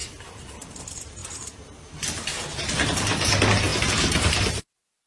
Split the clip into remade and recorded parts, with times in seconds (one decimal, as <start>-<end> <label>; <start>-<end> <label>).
0.0-0.7 remade; 0.7-1.2 recorded; 1.2-1.8 remade; 1.8-3.7 recorded; 3.7-4.4 remade; 4.4-5.1 recorded